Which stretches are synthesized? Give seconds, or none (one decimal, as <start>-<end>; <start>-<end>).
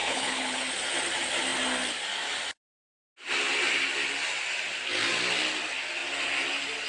0.0-0.7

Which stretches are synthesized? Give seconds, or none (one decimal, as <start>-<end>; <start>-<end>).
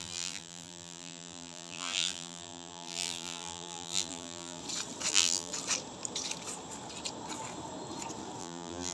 0.0-4.6; 5.1-5.5; 8.4-8.9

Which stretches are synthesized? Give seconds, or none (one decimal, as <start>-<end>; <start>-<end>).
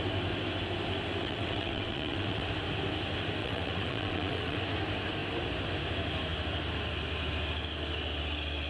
1.2-2.5; 3.4-4.6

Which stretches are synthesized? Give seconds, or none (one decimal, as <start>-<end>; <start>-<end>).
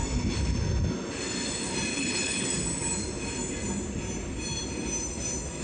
1.9-2.5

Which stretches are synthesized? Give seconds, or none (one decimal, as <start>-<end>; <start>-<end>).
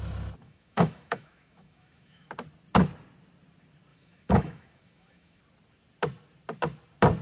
0.4-2.3; 3.9-5.4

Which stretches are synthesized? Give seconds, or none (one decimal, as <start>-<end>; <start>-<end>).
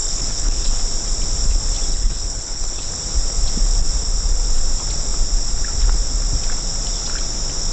0.0-0.8; 1.9-2.9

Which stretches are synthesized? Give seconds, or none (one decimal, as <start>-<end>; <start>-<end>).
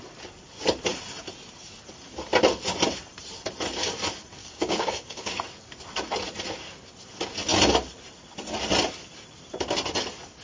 4.4-5.4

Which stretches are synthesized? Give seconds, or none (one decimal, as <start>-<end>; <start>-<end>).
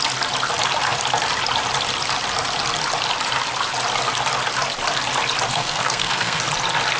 5.5-6.4